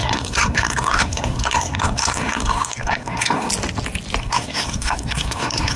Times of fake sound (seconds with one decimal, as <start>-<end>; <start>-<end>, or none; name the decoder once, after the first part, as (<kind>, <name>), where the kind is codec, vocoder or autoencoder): 0.0-3.5 (codec, SNAC); 4.2-5.8